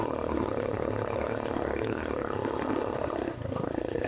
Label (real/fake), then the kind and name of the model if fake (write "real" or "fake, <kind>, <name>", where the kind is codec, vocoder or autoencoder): fake, codec, SNAC